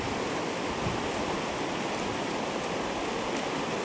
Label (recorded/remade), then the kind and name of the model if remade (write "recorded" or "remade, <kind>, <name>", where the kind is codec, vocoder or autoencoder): recorded